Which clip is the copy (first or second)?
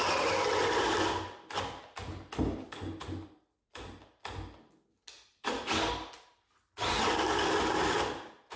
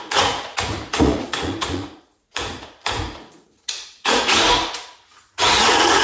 second